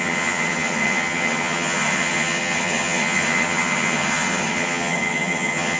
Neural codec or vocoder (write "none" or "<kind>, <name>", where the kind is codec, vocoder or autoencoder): vocoder, HiFi-GAN